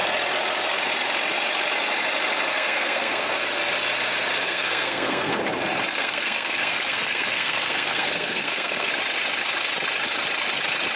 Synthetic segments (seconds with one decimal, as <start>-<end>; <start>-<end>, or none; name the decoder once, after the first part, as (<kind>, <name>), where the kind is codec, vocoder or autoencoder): 2.5-3.3 (codec, SNAC); 4.4-5.4; 5.9-8.9